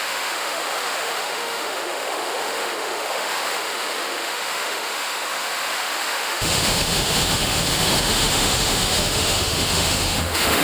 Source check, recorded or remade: remade